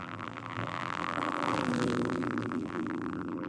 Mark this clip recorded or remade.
remade